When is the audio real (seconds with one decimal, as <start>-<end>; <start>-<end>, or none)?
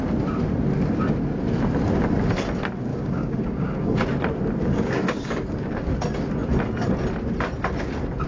0.0-2.9; 4.0-4.6; 5.9-8.3